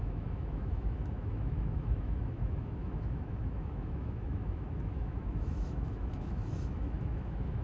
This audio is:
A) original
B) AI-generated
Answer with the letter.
B